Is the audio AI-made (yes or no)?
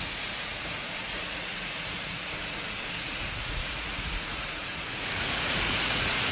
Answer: yes